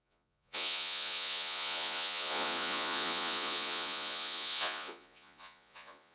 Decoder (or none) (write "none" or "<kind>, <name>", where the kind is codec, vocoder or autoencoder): vocoder, Vocos